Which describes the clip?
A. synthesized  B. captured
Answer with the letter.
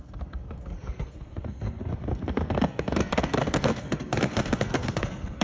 A